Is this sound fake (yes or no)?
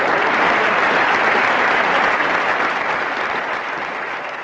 no